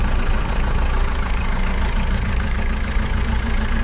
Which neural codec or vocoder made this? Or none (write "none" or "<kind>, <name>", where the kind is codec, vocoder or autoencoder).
vocoder, Vocos